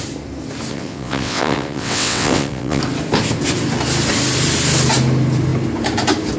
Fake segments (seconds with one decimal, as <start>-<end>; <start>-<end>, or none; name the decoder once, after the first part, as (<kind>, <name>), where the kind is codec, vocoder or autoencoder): 0.7-2.8 (vocoder, WaveNeXt)